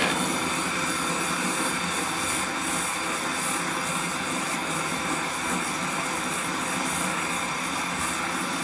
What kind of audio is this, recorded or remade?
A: recorded